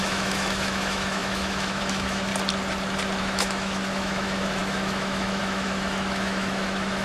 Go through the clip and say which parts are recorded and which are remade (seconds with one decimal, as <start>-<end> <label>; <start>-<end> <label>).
0.0-2.3 remade; 2.3-3.2 recorded; 3.2-7.0 remade